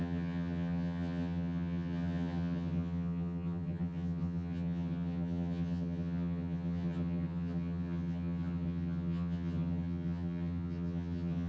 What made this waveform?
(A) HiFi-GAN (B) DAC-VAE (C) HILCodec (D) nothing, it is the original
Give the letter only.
A